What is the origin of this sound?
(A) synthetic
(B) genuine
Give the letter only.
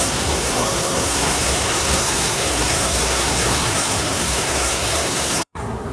A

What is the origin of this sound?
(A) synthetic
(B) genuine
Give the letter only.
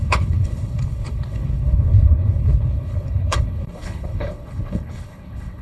A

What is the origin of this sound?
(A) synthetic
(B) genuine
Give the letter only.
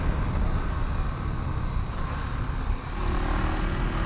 B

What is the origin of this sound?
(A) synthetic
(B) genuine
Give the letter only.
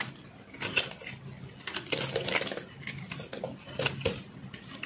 B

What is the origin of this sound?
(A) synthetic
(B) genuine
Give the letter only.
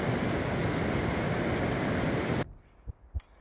B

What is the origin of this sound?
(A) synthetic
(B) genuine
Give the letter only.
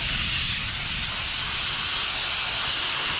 B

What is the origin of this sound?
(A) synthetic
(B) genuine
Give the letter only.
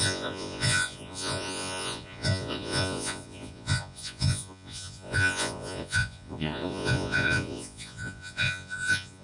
A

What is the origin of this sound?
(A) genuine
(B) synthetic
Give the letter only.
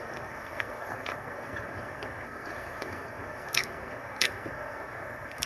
B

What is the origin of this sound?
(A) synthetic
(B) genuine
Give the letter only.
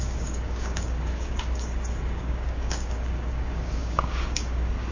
A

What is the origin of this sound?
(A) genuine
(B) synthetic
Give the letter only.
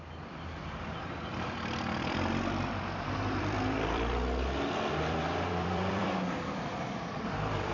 B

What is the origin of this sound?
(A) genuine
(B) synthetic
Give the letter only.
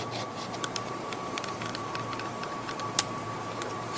B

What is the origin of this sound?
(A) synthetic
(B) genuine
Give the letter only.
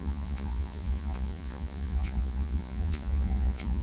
A